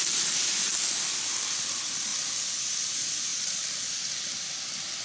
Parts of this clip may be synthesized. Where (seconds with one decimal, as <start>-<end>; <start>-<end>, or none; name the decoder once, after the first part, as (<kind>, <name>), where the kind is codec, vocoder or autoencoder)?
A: 3.3-3.9 (vocoder, BigVGAN v2)